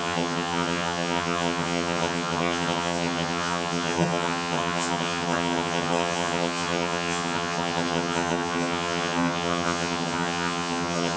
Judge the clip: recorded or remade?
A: remade